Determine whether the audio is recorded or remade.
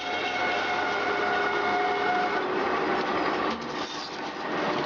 recorded